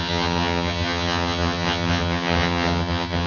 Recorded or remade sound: remade